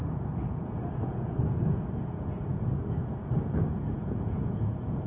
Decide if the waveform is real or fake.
fake